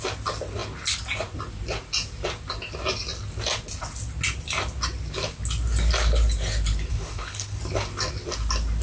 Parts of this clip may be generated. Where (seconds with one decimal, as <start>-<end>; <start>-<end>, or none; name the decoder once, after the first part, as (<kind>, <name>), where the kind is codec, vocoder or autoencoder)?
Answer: 6.9-7.6 (codec, HILCodec)